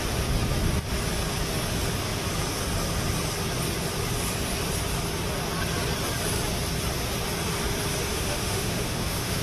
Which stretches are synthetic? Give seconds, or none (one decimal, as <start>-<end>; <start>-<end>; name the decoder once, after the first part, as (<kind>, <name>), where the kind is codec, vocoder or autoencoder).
8.1-9.4 (autoencoder, DAC-VAE)